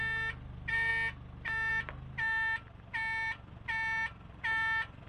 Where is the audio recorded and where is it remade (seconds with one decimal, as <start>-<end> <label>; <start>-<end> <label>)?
0.0-5.1 recorded